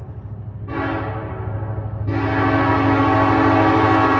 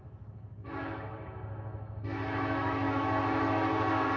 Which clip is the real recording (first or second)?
first